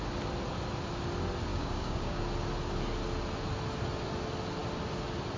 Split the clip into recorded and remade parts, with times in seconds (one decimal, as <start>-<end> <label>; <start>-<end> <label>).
0.0-1.5 recorded; 1.5-2.2 remade; 2.2-5.4 recorded